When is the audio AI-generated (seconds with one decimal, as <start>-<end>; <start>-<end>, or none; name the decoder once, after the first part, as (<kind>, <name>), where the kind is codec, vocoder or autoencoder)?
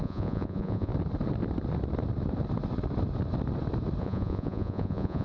0.0-0.9 (vocoder, Vocos); 4.0-5.2